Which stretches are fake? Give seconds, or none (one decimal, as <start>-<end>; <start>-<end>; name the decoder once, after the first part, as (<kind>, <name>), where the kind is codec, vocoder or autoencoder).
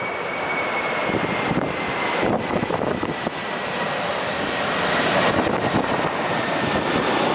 1.0-5.2 (vocoder, BigVGAN v2)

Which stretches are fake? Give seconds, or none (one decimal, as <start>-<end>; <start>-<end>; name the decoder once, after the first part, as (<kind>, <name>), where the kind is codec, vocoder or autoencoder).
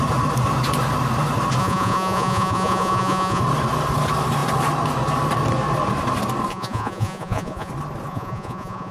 1.6-3.4 (vocoder, Vocos); 6.5-7.7; 8.1-8.9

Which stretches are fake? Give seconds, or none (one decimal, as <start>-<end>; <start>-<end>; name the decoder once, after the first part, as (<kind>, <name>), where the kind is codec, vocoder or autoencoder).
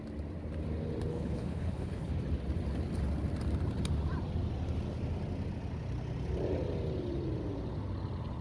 1.1-2.1 (codec, HILCodec)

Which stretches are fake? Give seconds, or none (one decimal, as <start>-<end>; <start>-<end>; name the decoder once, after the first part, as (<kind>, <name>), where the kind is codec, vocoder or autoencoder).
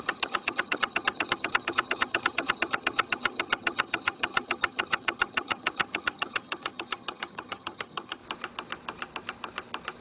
0.0-8.2 (vocoder, HiFi-GAN)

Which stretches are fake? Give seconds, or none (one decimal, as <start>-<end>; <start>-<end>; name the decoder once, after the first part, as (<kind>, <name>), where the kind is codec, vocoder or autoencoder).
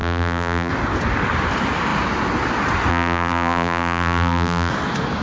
0.0-0.7 (vocoder, BigVGAN v2); 2.9-4.7